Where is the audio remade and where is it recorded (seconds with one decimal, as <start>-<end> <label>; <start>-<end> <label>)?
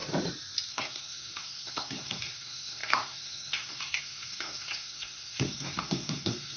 0.0-0.7 recorded; 0.7-6.6 remade